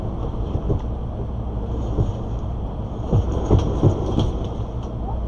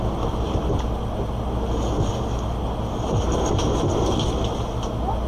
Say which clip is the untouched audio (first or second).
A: second